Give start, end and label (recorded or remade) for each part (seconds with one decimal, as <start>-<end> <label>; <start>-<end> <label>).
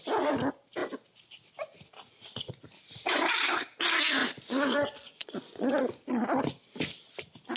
0.0-4.2 recorded; 4.2-5.8 remade; 5.8-7.6 recorded